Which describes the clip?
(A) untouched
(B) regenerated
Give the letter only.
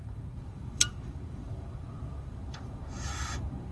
B